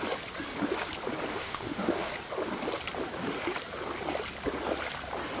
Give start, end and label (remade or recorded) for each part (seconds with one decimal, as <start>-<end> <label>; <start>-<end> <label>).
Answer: 0.0-1.3 recorded; 1.3-2.1 remade; 2.1-5.4 recorded